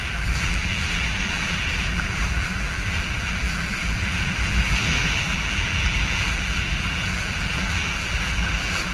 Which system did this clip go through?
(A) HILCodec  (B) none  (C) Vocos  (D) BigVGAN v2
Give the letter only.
D